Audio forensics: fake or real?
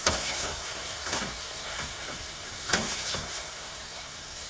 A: fake